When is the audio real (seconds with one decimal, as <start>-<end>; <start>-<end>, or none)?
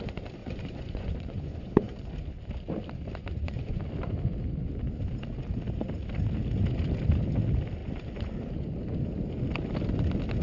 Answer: 0.0-0.4; 2.1-3.2; 3.8-10.4